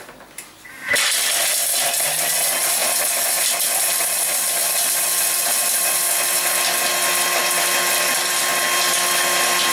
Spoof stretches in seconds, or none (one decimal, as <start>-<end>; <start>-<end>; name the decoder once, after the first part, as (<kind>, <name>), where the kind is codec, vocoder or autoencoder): none